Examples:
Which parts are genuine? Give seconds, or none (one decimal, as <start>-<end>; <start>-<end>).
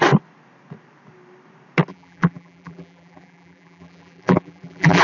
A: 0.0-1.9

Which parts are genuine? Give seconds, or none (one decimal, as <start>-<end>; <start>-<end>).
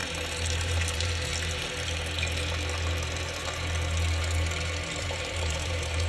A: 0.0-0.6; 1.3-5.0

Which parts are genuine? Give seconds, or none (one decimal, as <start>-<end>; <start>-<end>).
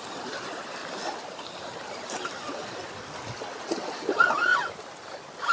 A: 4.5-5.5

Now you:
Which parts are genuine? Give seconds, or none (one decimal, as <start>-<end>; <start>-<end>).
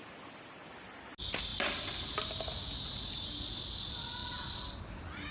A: 0.0-1.5; 2.7-4.2; 4.8-5.3